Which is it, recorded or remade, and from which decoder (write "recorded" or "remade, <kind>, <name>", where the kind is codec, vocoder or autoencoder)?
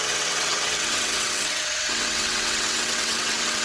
remade, vocoder, WaveNeXt